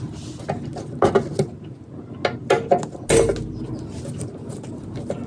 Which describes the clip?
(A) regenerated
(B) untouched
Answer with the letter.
B